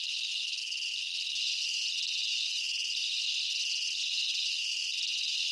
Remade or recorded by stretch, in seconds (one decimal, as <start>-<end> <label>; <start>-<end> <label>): 0.0-5.5 recorded